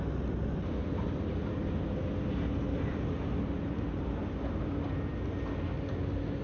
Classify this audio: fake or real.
real